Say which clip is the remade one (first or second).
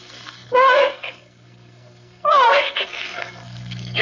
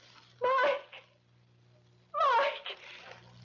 first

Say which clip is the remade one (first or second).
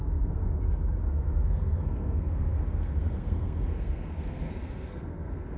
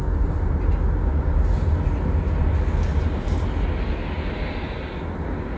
first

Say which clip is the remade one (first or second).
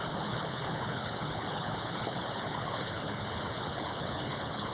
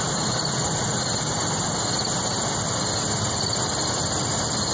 first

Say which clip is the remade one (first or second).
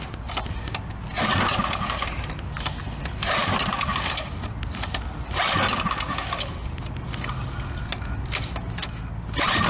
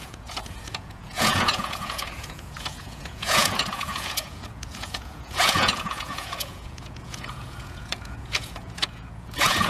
second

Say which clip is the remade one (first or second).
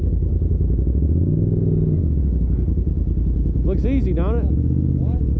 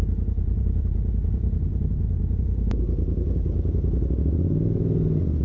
second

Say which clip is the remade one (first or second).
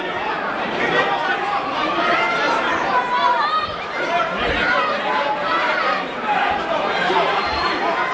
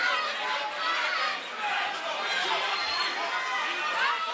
first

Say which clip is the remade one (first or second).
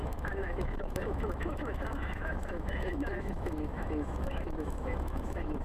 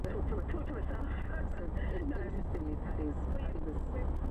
first